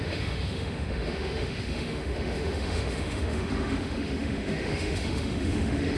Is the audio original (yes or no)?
no